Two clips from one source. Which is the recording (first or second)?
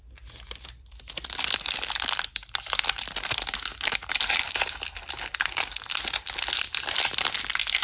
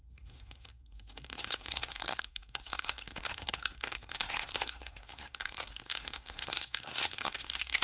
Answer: first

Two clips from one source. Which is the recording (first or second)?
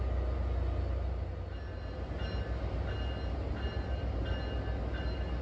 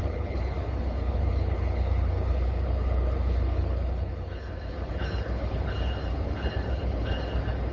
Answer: first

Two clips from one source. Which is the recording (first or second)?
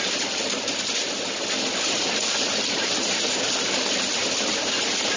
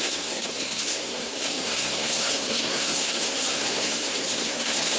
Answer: first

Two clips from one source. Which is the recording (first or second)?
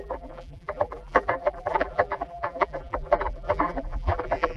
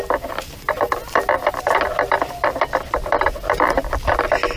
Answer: second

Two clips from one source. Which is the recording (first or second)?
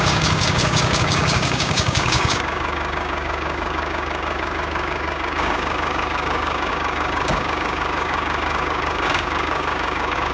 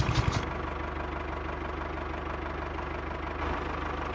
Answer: second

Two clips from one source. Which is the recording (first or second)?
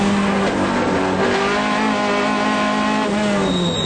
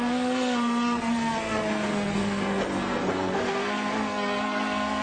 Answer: first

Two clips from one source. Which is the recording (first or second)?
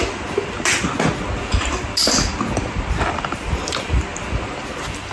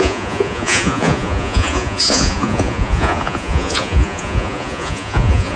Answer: first